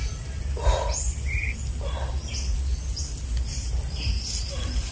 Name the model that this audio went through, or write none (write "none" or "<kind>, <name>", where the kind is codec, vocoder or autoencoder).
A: none